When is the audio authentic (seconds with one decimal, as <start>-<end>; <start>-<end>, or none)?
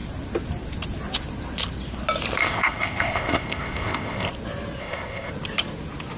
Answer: 0.0-2.4; 4.3-4.8; 5.3-6.2